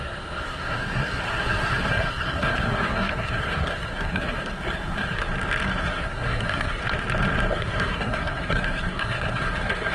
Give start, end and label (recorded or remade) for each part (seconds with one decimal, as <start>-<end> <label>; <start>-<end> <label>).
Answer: 0.0-5.3 remade; 5.3-5.8 recorded; 5.8-6.8 remade; 6.8-7.5 recorded; 7.5-9.9 remade